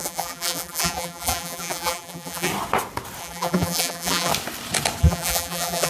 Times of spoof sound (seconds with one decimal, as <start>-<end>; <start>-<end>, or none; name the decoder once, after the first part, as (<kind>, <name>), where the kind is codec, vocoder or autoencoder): 0.0-2.5 (vocoder, BigVGAN v2); 3.2-4.3; 5.0-5.9